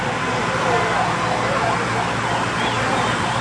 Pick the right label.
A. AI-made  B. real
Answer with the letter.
B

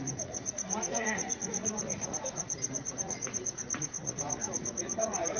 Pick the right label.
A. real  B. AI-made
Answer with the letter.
B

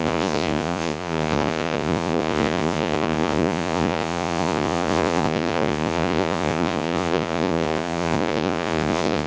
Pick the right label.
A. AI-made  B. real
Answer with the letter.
A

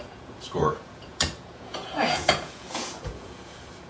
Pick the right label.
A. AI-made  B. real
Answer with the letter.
A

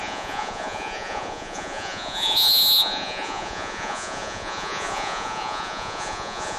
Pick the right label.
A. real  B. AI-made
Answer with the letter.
B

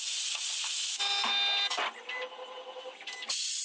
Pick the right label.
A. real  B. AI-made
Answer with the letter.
A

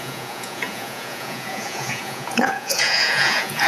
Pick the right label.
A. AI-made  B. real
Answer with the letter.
A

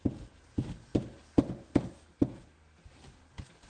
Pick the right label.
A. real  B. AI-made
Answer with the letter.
A